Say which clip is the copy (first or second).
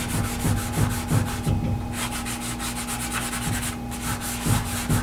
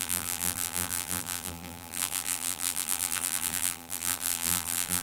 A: second